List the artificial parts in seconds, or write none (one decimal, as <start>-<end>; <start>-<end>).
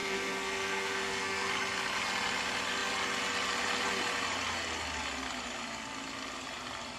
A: 0.0-1.5